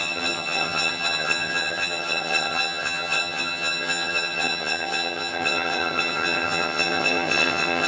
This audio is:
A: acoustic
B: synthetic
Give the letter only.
B